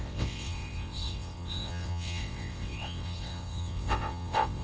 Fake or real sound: fake